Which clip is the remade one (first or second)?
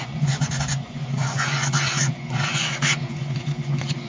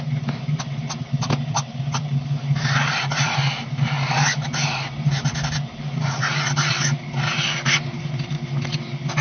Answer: first